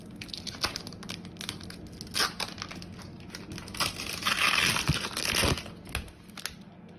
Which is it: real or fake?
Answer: real